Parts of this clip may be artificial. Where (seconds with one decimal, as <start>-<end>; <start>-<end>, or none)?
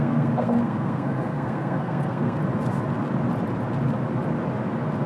0.0-2.4